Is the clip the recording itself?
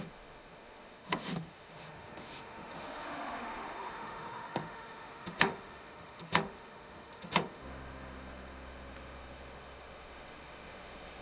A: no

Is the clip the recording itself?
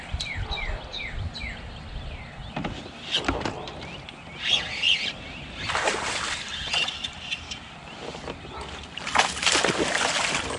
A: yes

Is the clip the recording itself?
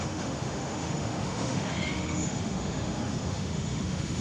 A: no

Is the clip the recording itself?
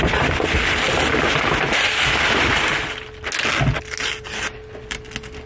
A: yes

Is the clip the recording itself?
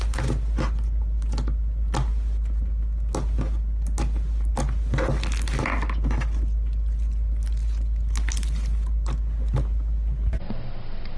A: yes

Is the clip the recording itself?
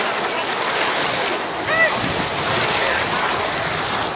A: yes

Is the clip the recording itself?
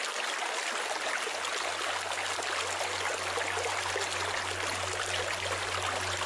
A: yes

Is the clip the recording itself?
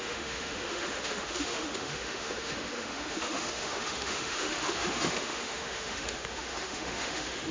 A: no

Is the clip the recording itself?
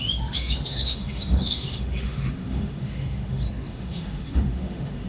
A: no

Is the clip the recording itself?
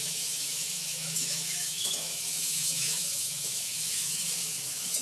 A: no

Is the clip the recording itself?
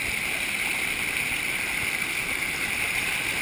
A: yes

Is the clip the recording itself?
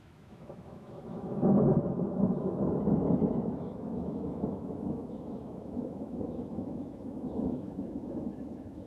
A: no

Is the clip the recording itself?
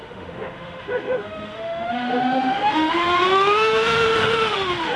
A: no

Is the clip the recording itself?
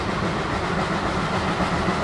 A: yes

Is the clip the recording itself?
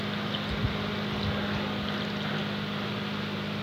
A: yes